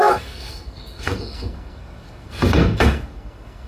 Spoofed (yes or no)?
yes